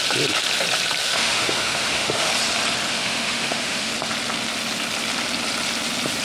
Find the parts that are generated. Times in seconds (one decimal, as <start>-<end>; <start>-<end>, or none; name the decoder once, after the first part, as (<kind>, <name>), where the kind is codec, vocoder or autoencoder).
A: 1.0-2.3 (autoencoder, DAC-VAE); 2.9-3.9